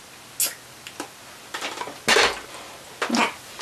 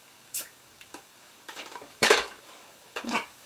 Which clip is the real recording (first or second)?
first